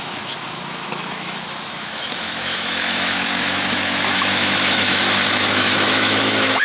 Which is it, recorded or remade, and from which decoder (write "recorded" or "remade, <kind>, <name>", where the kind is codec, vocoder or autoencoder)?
remade, autoencoder, DAC-VAE